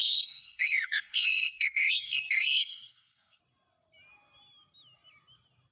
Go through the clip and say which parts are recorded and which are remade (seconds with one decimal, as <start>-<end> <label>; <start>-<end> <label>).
0.0-3.4 remade; 3.4-5.7 recorded